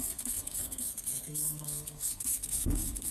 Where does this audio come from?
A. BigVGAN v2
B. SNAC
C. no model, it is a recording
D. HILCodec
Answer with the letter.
B